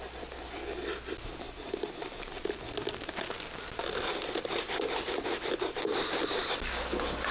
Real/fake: real